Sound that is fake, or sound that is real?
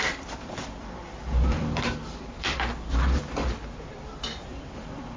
fake